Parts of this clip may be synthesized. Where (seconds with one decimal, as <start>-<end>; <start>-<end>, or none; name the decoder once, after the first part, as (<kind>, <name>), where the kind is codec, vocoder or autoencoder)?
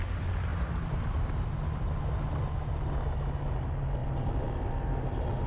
0.5-2.0 (vocoder, BigVGAN v2); 4.0-4.7